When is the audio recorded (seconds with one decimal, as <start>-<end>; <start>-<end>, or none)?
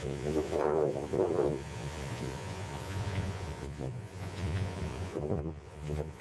none